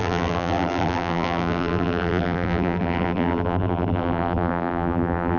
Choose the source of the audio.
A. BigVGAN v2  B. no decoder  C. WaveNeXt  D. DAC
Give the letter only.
A